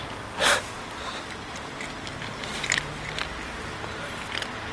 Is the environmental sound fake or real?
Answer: real